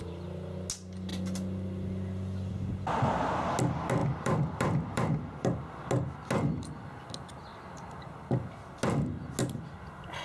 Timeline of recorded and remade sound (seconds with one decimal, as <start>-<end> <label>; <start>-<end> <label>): 0.0-1.1 recorded; 1.1-2.5 remade; 2.5-4.0 recorded; 4.0-5.7 remade; 5.7-10.2 recorded